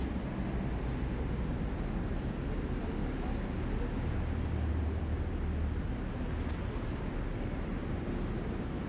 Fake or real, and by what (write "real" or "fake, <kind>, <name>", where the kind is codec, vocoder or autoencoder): real